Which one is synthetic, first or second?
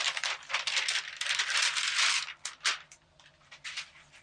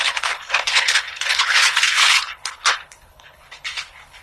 second